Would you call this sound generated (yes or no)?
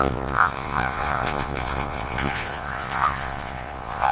yes